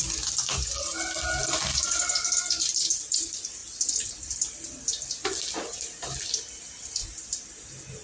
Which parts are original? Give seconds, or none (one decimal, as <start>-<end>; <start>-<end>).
0.0-1.4; 2.4-8.0